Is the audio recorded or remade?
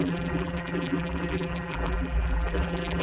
remade